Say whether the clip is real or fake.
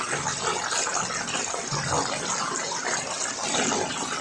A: real